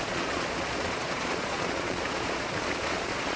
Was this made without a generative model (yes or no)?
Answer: no